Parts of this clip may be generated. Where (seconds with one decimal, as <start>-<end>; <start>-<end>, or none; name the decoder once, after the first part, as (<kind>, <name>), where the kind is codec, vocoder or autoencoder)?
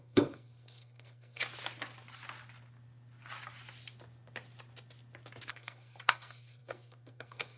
0.0-1.4 (codec, SNAC); 5.5-7.6